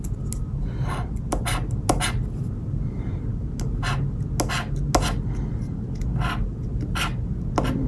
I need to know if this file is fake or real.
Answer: real